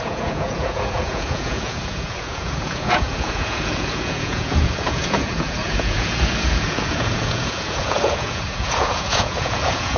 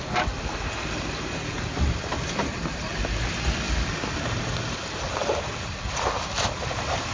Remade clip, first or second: first